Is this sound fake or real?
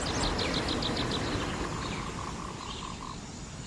real